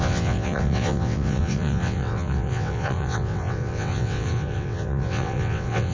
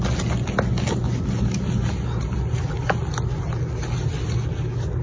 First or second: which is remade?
first